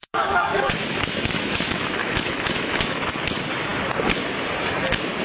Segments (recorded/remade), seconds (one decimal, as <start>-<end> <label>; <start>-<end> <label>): 0.0-3.1 remade; 3.1-5.2 recorded

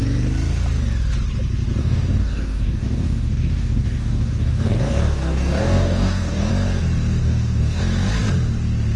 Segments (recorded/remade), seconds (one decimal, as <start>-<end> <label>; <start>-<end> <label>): 0.0-1.8 recorded; 1.8-6.5 remade; 6.5-7.2 recorded; 7.2-7.8 remade; 7.8-9.0 recorded

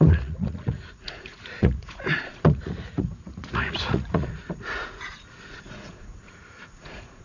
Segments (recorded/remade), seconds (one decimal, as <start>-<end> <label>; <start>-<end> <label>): 0.0-7.2 remade

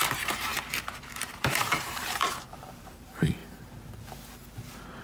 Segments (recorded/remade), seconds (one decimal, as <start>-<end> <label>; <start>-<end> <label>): 0.0-3.4 remade; 3.4-5.0 recorded

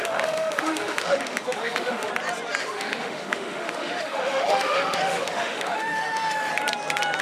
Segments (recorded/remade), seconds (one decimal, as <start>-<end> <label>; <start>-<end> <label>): 0.0-2.1 remade; 2.1-2.6 recorded; 2.6-6.5 remade; 6.5-7.2 recorded